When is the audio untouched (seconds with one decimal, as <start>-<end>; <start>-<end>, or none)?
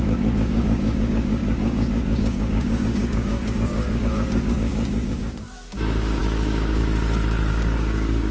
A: 6.8-7.5